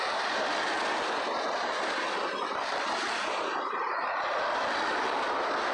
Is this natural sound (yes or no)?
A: yes